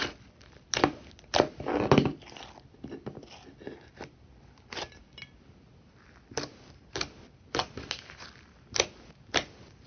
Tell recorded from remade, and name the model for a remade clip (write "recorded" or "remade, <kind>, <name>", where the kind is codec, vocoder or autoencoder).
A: recorded